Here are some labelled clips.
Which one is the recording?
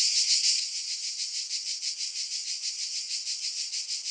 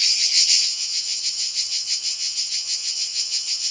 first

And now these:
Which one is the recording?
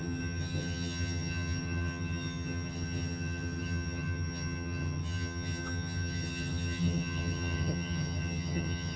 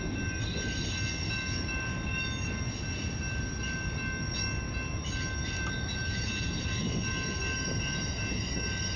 second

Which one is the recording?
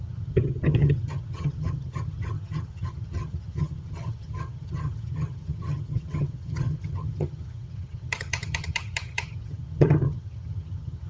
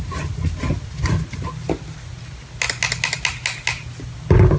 second